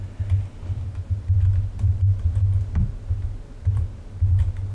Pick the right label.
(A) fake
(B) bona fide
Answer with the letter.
B